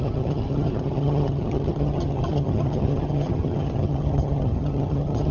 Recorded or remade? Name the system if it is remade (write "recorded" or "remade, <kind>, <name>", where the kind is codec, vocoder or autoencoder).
remade, vocoder, HiFi-GAN